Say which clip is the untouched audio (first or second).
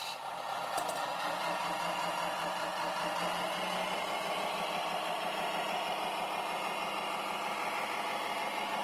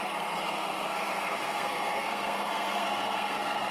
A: first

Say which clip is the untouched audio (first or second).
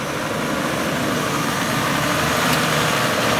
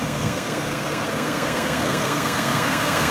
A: first